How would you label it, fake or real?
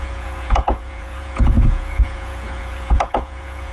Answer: fake